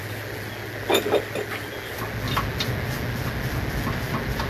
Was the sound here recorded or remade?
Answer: recorded